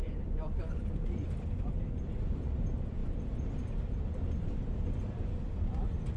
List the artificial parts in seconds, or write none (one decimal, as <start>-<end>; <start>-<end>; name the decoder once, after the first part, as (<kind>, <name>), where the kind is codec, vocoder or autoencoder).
0.0-0.9 (vocoder, BigVGAN v2); 3.0-6.2